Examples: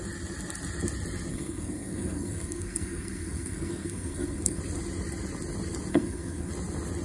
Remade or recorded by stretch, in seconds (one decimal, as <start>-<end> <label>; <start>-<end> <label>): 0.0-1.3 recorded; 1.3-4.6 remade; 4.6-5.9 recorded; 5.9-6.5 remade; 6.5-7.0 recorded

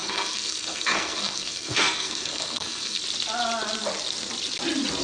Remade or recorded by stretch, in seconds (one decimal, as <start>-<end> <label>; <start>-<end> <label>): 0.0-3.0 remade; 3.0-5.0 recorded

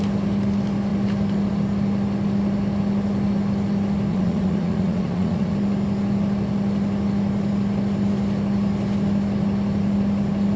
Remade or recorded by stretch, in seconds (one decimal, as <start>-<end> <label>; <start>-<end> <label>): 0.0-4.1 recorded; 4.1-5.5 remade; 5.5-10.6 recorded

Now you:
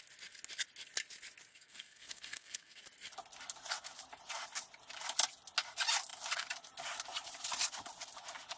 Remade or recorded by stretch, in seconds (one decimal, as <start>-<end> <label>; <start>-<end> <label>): 0.0-1.5 recorded; 1.5-2.8 remade; 2.8-8.6 recorded

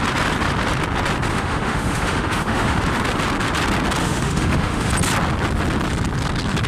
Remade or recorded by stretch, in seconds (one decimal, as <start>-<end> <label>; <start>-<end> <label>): 0.0-1.3 recorded; 1.3-2.8 remade; 2.8-4.0 recorded; 4.0-4.9 remade; 4.9-6.7 recorded

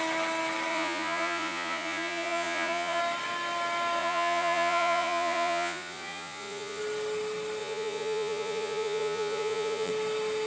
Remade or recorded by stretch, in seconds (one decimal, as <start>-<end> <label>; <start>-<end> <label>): 0.0-0.7 recorded; 0.7-3.0 remade; 3.0-4.0 recorded; 4.0-6.8 remade; 6.8-7.6 recorded; 7.6-9.9 remade; 9.9-10.5 recorded